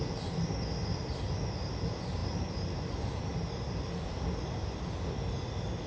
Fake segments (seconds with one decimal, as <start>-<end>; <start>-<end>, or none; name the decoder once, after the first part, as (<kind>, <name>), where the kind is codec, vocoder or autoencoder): none

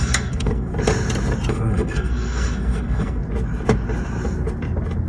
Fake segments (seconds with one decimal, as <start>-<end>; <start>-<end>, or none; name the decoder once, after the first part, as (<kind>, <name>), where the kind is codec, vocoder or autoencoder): 0.0-0.7 (codec, SNAC); 1.5-3.2